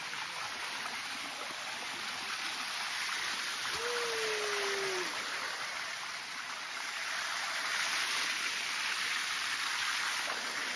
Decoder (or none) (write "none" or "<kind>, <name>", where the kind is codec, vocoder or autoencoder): none